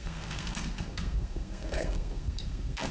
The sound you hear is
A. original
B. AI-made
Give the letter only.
B